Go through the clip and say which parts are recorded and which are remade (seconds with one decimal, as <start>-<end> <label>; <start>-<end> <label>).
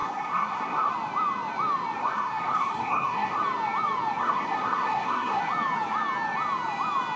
0.0-0.9 remade; 0.9-2.0 recorded; 2.0-3.4 remade; 3.4-4.2 recorded; 4.2-5.4 remade; 5.4-7.2 recorded